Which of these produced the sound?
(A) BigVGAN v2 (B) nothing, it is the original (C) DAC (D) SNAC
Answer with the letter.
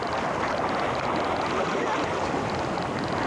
B